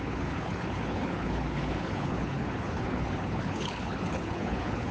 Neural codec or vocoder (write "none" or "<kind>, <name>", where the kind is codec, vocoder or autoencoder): codec, HILCodec